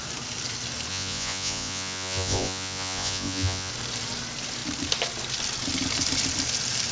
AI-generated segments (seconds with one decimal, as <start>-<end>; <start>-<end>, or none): 0.9-3.7